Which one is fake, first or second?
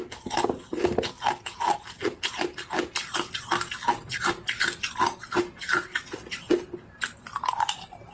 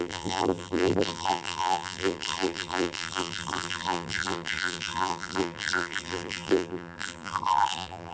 second